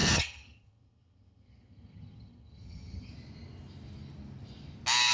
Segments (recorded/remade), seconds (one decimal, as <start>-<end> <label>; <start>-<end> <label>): 0.0-3.1 remade; 3.1-5.1 recorded